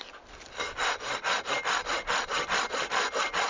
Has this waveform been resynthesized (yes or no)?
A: no